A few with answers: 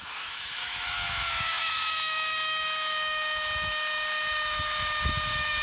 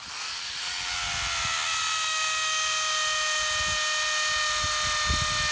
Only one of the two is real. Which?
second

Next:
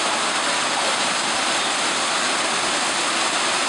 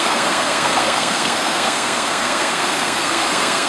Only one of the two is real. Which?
first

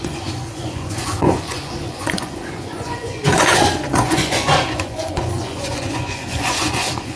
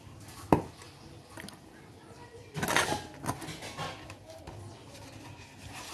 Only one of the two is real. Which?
second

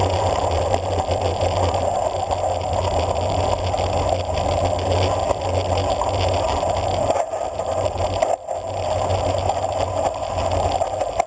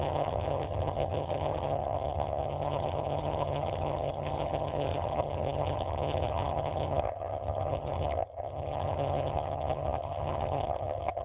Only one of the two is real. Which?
first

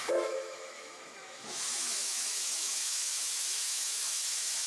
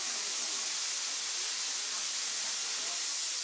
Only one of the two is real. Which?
second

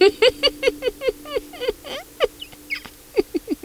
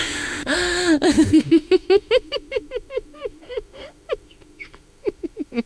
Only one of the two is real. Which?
first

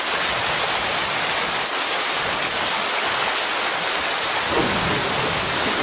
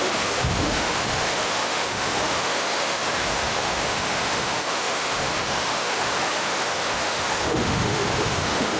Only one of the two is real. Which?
first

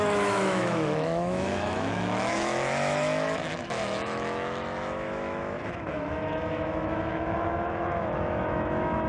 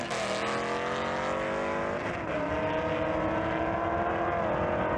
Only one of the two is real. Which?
second